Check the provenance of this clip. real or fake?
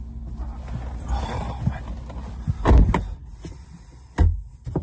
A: real